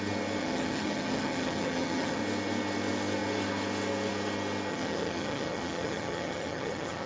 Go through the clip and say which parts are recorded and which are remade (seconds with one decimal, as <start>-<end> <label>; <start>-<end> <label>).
0.0-0.4 recorded; 0.4-2.2 remade; 2.2-4.7 recorded; 4.7-7.1 remade